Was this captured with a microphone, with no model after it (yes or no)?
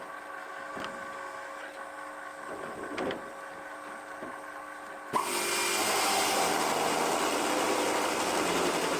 yes